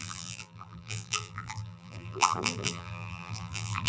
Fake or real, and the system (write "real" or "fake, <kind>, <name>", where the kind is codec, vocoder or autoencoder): fake, vocoder, BigVGAN v2